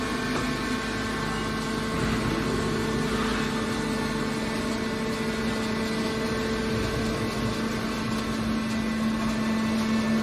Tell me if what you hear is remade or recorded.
recorded